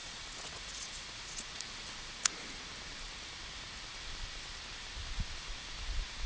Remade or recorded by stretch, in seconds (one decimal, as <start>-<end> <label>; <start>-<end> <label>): 0.0-2.7 remade; 2.7-6.3 recorded